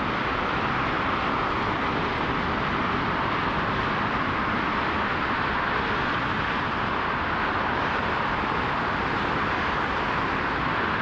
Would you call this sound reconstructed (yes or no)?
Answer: no